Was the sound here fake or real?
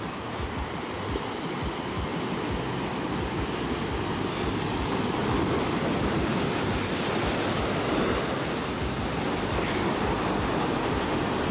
real